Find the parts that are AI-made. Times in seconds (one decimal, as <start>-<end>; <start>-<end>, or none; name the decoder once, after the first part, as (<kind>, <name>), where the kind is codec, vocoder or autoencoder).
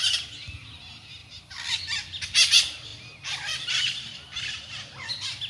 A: none